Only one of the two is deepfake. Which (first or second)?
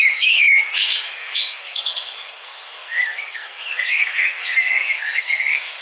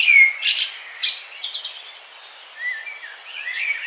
first